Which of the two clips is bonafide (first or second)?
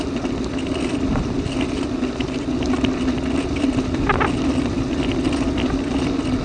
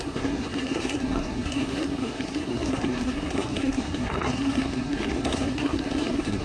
first